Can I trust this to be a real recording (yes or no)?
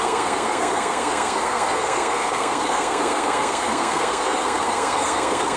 no